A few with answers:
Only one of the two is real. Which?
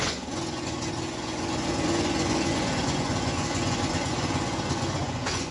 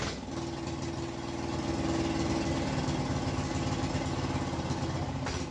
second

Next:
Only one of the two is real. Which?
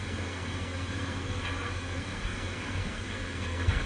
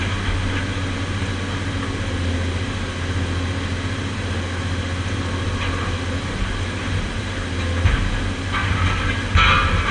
second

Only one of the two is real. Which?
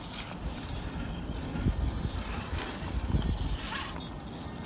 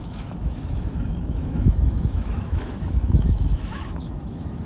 first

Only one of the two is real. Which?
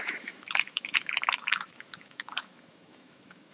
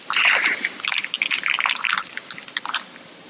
second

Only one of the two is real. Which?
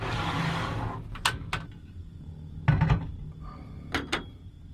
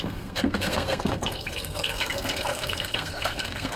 first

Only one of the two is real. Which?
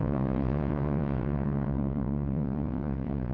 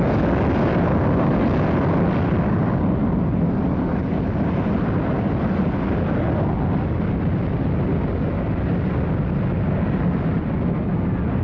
second